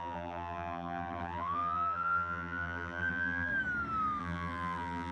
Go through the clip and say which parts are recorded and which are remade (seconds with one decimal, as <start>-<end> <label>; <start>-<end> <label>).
0.0-3.5 remade; 3.5-4.2 recorded; 4.2-5.1 remade